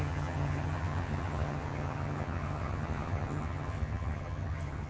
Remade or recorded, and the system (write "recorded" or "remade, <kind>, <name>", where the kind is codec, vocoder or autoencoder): remade, vocoder, HiFi-GAN